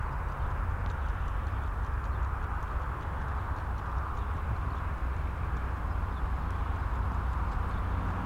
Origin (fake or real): real